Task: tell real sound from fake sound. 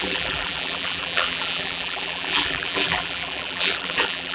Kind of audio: fake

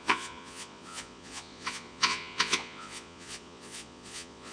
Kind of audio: fake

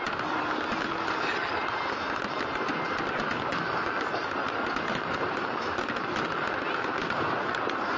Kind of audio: real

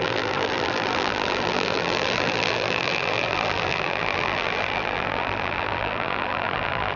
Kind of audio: fake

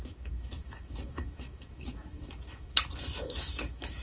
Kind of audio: fake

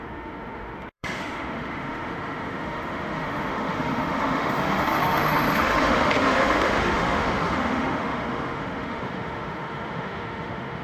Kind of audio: fake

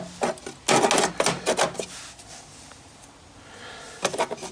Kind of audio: real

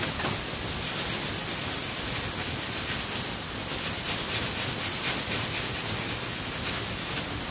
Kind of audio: real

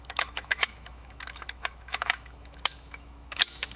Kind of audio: fake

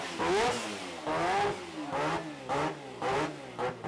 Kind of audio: real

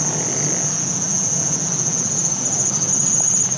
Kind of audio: fake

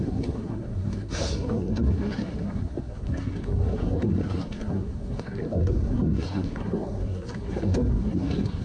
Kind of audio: fake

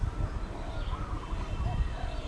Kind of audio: real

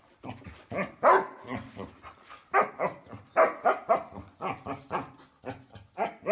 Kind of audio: real